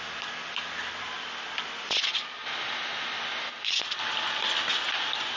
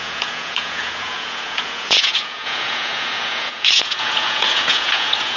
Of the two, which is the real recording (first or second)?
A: first